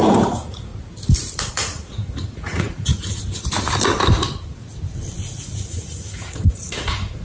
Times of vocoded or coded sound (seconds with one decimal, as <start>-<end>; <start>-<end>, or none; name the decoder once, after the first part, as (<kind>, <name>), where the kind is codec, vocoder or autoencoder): 0.0-0.7 (vocoder, Vocos); 1.5-2.9; 5.7-7.2